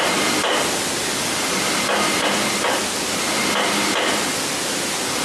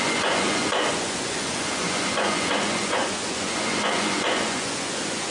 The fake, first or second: second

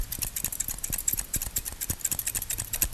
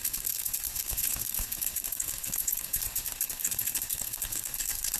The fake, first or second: second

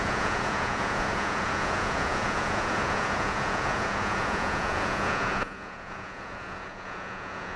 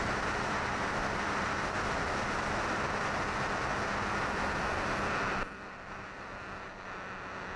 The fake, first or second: first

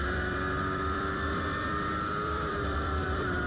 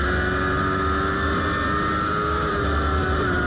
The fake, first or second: first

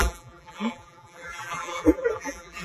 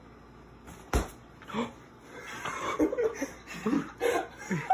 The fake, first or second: first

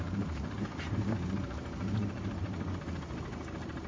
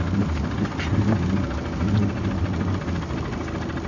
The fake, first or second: first